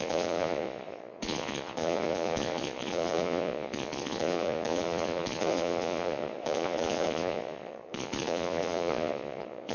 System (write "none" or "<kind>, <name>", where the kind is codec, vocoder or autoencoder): vocoder, Vocos